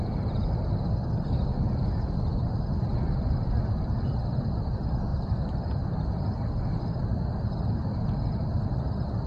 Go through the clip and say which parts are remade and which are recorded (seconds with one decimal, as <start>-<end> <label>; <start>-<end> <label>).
0.0-2.3 recorded; 2.3-4.1 remade; 4.1-5.1 recorded; 5.1-6.2 remade; 6.2-9.3 recorded